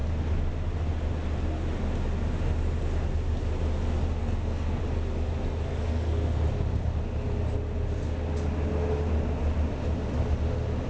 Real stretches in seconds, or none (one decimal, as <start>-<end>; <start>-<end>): 0.0-4.2; 4.8-5.7; 6.4-10.9